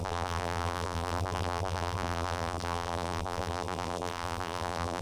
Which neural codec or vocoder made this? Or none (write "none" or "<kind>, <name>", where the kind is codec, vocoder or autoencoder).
vocoder, BigVGAN v2